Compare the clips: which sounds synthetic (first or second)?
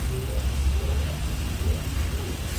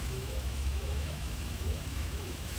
second